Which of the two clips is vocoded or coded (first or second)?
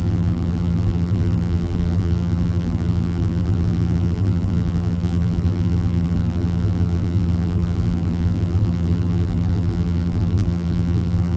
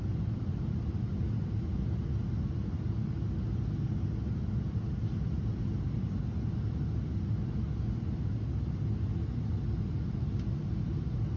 first